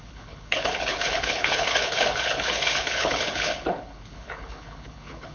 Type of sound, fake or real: fake